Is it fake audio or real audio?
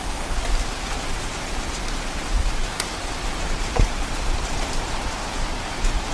real